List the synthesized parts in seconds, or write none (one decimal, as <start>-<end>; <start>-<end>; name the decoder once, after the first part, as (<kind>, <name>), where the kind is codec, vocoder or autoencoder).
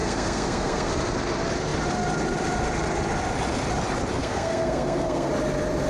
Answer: 0.0-0.9 (codec, SNAC); 4.2-5.3